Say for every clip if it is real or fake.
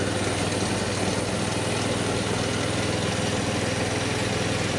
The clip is real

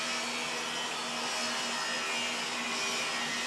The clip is real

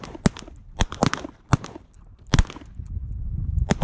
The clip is real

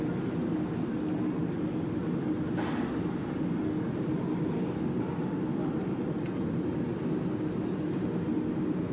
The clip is real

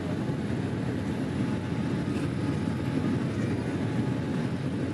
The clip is real